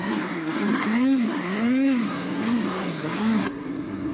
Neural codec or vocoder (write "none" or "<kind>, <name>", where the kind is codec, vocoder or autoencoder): codec, SNAC